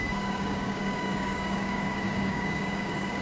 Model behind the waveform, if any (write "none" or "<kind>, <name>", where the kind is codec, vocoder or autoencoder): codec, DAC